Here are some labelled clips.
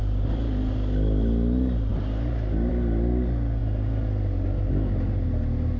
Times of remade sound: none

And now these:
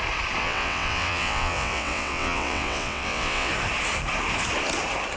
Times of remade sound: 0.4-3.5 (vocoder, WaveNeXt)

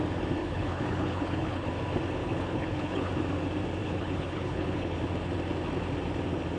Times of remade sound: 0.4-1.7 (codec, HILCodec); 2.2-3.1; 3.8-5.0

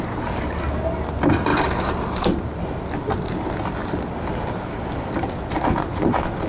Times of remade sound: 1.5-2.6 (vocoder, BigVGAN v2); 3.8-4.3

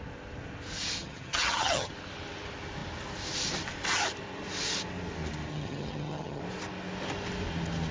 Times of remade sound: 1.0-1.9 (vocoder, HiFi-GAN); 5.5-6.4

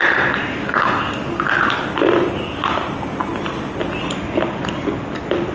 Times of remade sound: none

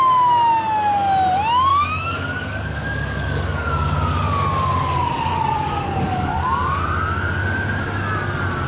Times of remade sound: 1.7-4.2 (codec, DAC); 5.3-6.8

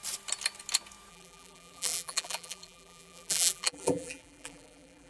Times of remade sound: 1.1-5.1 (vocoder, BigVGAN v2)